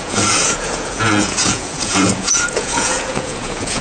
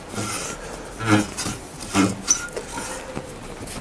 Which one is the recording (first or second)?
second